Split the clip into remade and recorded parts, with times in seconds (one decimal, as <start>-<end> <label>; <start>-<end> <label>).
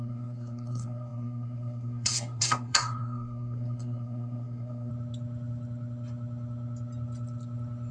0.0-4.9 remade; 4.9-7.9 recorded